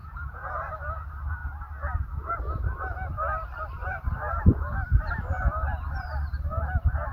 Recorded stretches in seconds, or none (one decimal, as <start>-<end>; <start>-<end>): 0.7-7.1